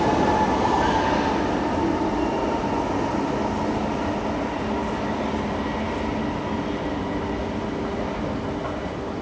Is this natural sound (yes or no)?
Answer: yes